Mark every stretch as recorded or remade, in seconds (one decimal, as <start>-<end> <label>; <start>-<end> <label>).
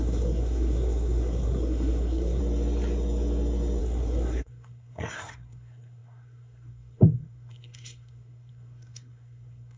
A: 0.0-2.4 remade; 2.4-3.8 recorded; 3.8-9.8 remade